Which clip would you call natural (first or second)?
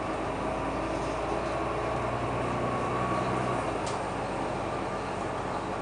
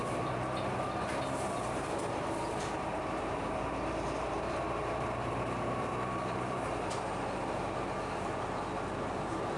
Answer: first